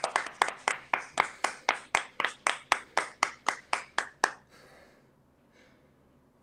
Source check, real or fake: real